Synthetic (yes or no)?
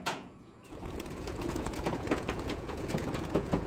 yes